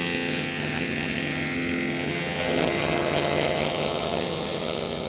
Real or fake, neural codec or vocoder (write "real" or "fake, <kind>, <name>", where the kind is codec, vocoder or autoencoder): fake, vocoder, HiFi-GAN